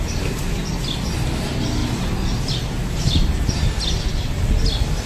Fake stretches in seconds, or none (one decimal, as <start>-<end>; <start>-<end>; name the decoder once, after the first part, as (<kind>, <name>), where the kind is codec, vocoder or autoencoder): none

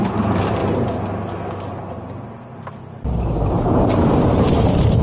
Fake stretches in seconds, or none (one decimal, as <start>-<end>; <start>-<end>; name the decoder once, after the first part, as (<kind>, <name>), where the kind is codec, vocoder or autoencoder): 0.0-0.6 (vocoder, BigVGAN v2); 3.5-5.0

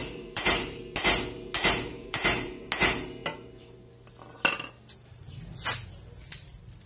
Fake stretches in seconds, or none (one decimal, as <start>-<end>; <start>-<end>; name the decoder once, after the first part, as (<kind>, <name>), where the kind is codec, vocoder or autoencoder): 0.0-0.8 (vocoder, BigVGAN v2); 1.9-2.5

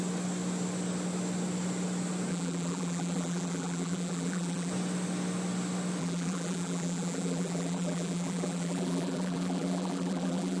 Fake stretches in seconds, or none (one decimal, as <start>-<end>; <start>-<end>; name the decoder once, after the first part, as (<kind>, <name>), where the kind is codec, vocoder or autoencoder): 2.3-4.7 (vocoder, BigVGAN v2); 6.0-10.6

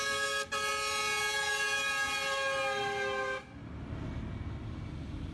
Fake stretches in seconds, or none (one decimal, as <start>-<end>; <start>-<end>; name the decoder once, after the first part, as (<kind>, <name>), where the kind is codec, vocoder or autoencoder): none